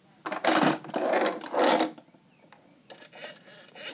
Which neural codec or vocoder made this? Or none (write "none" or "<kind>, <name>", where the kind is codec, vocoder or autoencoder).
none